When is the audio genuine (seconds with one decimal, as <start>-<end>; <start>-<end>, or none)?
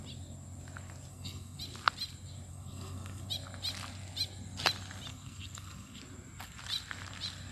0.0-1.1; 1.6-2.5; 3.3-5.1; 6.0-7.5